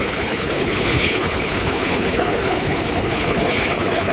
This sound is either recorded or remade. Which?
remade